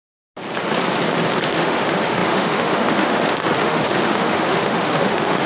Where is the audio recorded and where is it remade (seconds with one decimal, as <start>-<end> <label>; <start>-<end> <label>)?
0.0-1.5 recorded; 1.5-5.5 remade